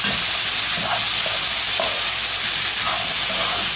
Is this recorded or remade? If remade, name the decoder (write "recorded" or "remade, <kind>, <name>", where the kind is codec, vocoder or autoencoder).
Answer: recorded